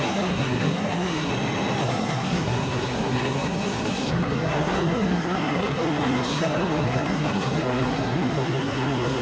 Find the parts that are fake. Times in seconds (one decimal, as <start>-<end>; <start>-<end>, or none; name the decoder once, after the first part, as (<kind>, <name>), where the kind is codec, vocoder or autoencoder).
0.0-1.3 (codec, SNAC); 1.8-9.2